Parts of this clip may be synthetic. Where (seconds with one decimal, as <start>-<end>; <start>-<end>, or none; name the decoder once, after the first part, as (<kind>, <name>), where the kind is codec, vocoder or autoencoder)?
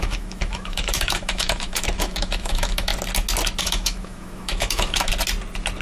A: 0.0-2.9 (autoencoder, DAC-VAE); 3.6-5.1